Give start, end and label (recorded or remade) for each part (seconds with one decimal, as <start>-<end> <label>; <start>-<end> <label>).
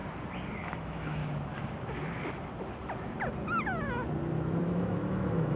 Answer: 0.0-0.7 recorded; 0.7-1.2 remade; 1.2-4.6 recorded; 4.6-5.6 remade